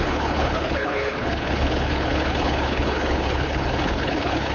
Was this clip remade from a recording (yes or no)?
yes